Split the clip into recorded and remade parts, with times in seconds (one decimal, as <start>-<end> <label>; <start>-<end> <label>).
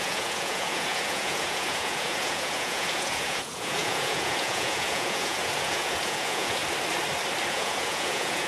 0.0-6.6 remade; 6.6-7.5 recorded; 7.5-8.5 remade